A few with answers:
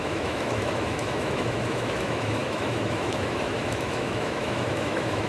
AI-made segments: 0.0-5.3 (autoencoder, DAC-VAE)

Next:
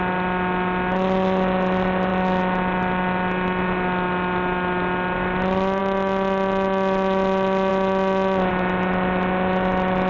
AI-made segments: none